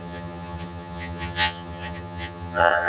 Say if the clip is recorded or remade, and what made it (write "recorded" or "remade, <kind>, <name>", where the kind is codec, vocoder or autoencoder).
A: remade, vocoder, HiFi-GAN